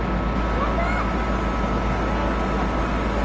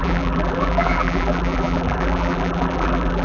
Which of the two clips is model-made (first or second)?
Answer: second